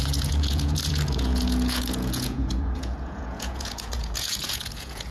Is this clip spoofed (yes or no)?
yes